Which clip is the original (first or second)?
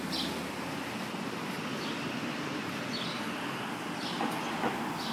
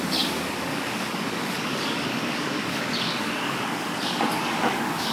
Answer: first